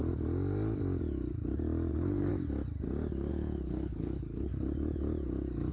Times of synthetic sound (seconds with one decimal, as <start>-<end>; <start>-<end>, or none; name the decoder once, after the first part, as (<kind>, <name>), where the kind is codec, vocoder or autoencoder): 1.9-2.3 (codec, HILCodec); 3.3-4.5